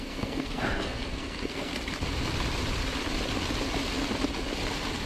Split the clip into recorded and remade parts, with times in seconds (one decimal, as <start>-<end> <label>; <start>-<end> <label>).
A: 0.0-1.7 remade; 1.7-5.1 recorded